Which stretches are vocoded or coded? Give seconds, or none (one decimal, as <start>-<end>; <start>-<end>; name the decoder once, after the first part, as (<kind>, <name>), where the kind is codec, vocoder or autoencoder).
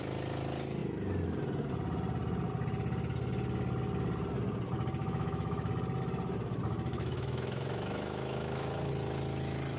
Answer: 5.0-5.7 (autoencoder, DAC-VAE); 6.9-8.9